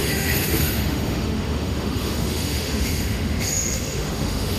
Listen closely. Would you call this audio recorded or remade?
remade